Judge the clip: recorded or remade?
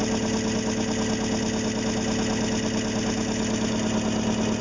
recorded